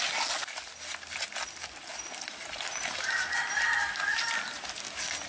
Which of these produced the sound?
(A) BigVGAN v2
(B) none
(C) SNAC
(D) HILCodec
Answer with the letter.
B